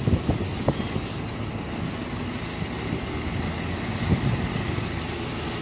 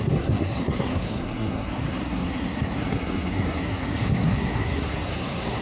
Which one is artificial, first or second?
second